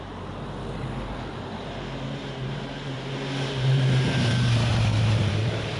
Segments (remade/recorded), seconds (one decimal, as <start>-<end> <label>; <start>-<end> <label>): 0.0-2.2 recorded; 2.2-5.8 remade